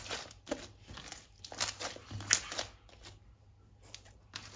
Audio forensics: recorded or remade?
recorded